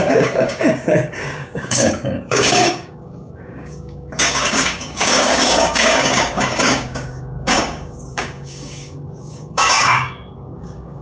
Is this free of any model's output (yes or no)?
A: no